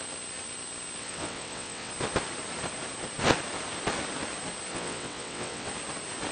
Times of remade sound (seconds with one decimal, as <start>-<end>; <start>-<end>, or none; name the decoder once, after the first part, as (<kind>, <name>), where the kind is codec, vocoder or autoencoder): 1.0-1.9 (vocoder, WaveNeXt); 4.7-5.7

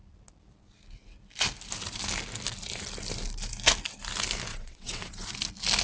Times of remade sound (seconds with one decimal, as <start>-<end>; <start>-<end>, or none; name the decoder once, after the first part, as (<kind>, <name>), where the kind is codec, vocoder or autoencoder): 4.5-5.3 (vocoder, WaveNeXt)

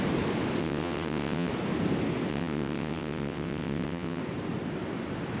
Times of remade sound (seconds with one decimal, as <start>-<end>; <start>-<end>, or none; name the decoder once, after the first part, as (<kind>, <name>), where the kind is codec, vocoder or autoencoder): 0.6-1.5 (vocoder, WaveNeXt); 2.3-4.2

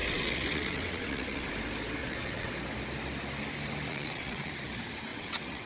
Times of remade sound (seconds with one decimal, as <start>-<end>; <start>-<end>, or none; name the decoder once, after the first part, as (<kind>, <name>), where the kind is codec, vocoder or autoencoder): 0.0-1.5 (vocoder, WaveNeXt); 2.0-2.5; 3.9-4.5; 5.1-5.7

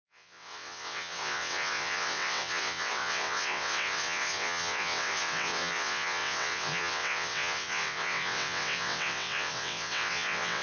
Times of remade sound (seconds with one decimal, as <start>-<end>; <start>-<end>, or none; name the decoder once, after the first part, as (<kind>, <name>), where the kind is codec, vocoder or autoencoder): 0.0-10.6 (vocoder, WaveNeXt)